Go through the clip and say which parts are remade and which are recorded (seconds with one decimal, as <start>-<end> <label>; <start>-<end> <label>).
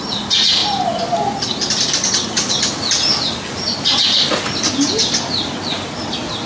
0.0-6.5 recorded